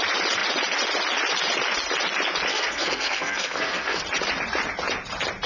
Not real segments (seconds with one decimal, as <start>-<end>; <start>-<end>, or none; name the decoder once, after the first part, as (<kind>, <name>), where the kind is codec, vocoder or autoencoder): 2.5-4.0 (codec, SNAC)